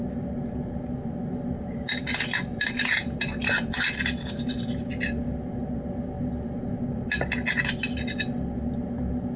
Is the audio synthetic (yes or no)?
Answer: no